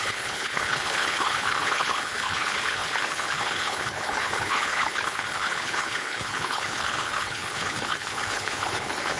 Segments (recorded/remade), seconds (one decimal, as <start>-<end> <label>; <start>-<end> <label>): 0.0-9.2 remade

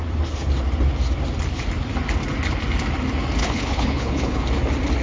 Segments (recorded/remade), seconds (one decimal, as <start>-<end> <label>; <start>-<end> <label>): 0.0-3.4 recorded; 3.4-4.4 remade; 4.4-5.0 recorded

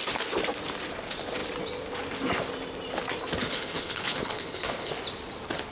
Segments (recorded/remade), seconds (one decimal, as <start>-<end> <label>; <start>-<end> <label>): 0.0-3.4 recorded; 3.4-4.9 remade; 4.9-5.7 recorded

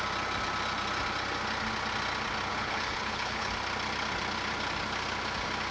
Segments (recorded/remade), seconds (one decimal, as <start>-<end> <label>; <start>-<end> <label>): 0.0-2.5 recorded; 2.5-3.5 remade; 3.5-5.7 recorded

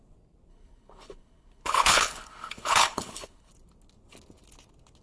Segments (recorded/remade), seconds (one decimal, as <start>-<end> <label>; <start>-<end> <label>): 0.0-0.5 recorded; 0.5-3.5 remade; 3.5-5.0 recorded

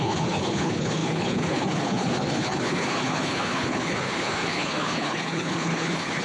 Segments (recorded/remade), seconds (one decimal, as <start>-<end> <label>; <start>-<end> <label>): 0.0-6.2 remade

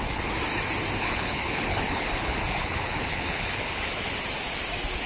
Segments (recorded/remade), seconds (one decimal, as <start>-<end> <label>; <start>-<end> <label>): 0.0-1.0 recorded; 1.0-4.1 remade; 4.1-5.1 recorded

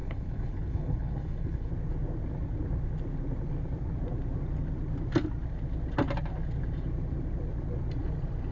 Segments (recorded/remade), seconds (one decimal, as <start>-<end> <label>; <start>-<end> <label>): 0.0-1.7 remade; 1.7-8.5 recorded